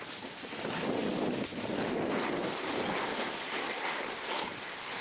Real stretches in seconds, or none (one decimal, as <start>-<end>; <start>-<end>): 0.0-5.0